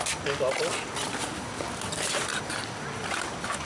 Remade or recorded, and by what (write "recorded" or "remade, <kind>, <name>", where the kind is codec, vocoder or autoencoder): recorded